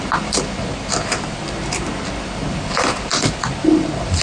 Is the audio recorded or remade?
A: recorded